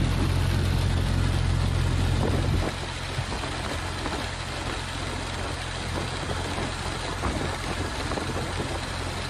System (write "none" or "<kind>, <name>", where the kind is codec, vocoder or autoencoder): none